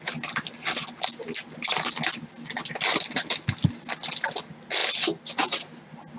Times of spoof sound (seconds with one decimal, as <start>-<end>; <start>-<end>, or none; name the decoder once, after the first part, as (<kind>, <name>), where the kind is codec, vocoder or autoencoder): none